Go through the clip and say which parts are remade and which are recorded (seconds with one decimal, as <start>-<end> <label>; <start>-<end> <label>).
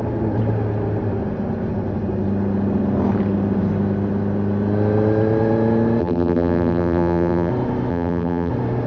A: 0.0-6.0 recorded; 6.0-7.5 remade; 7.5-7.9 recorded; 7.9-8.5 remade; 8.5-8.9 recorded